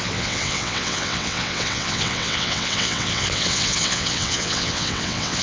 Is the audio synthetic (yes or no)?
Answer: yes